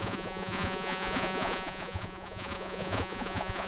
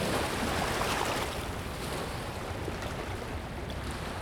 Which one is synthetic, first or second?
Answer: first